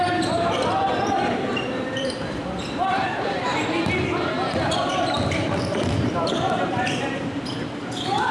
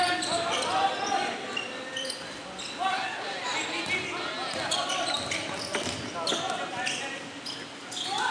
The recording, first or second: second